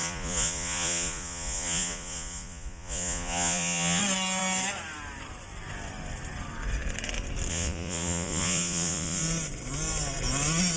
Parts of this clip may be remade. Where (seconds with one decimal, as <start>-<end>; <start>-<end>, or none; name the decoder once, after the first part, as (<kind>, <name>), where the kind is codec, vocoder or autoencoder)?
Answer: 0.0-4.0 (vocoder, Vocos); 7.5-9.2